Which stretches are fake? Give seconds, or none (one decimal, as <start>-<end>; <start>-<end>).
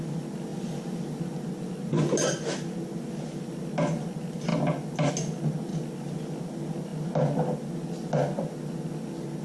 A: none